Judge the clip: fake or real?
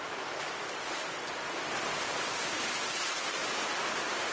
real